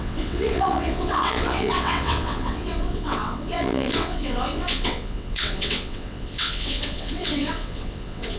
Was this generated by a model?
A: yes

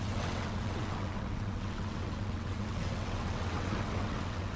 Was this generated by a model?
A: yes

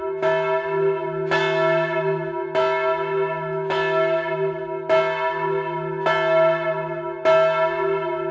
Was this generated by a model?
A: no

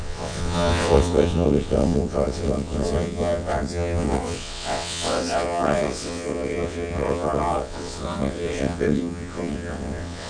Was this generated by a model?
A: yes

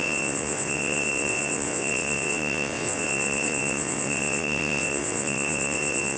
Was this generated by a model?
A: yes